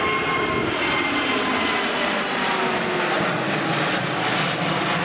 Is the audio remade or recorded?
recorded